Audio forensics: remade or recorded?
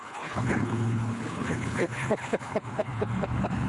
remade